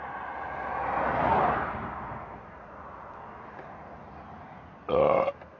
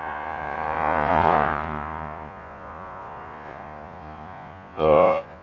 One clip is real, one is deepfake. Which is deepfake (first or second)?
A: second